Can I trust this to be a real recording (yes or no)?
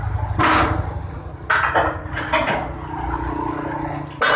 yes